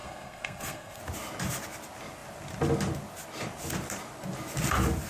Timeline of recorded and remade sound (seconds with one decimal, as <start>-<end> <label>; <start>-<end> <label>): 0.0-1.0 remade; 1.0-5.1 recorded